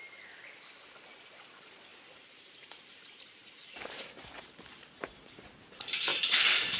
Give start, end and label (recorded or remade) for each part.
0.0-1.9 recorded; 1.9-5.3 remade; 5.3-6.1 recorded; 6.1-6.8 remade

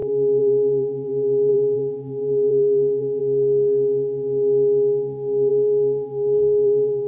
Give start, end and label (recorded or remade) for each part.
0.0-3.2 remade; 3.2-5.5 recorded; 5.5-7.1 remade